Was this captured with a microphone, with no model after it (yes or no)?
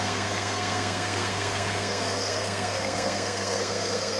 no